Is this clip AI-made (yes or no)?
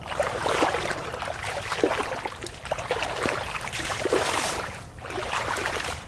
no